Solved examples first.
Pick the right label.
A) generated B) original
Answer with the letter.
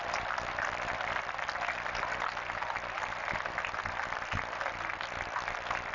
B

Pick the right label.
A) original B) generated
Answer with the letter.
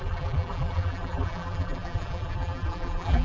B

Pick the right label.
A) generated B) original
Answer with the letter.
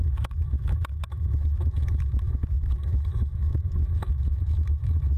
A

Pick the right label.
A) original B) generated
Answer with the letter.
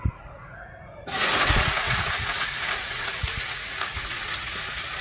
B